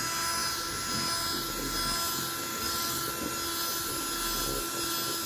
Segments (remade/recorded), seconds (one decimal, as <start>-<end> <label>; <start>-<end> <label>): 0.0-2.5 recorded; 2.5-3.1 remade; 3.1-5.3 recorded